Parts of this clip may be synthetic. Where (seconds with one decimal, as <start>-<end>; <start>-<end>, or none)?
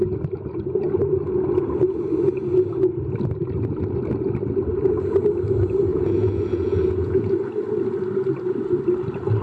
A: 5.9-7.3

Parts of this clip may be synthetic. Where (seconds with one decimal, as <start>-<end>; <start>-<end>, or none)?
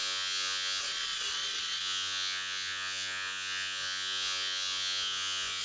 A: 0.0-0.8; 1.8-5.6